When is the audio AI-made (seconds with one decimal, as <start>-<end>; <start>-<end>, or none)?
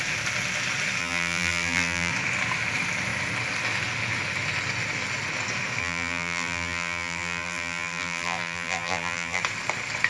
1.0-2.1; 5.8-9.4